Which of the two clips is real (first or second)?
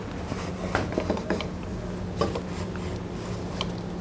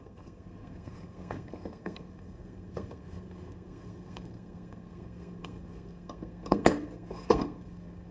first